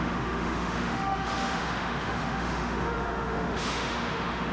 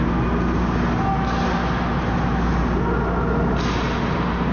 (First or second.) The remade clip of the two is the first